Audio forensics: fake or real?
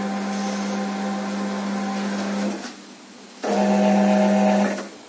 real